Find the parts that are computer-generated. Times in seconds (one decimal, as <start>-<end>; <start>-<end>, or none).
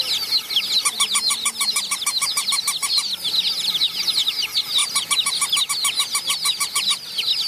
none